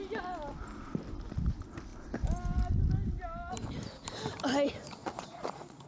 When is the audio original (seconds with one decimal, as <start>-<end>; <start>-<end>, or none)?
0.0-5.0